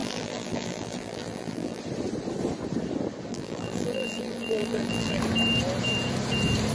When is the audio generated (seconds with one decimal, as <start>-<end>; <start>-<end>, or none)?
0.0-1.8; 3.3-5.2